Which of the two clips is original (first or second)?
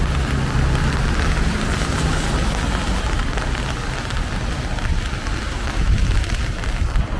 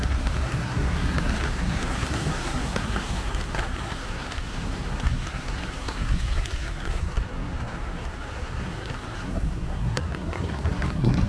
first